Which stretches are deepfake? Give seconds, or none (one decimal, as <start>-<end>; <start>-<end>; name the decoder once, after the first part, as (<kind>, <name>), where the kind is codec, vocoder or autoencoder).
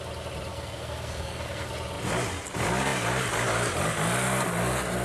0.5-1.7 (codec, SNAC)